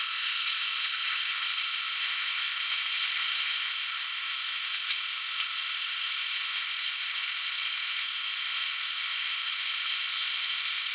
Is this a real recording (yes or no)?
no